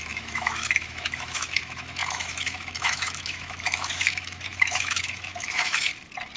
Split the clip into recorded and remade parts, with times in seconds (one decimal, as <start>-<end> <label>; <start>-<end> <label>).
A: 0.0-5.9 remade; 5.9-6.4 recorded